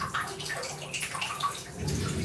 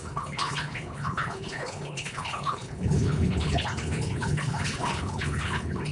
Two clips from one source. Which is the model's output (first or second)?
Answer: second